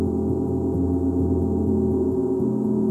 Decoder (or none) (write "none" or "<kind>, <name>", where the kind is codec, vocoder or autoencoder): none